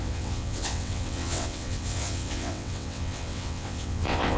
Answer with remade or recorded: remade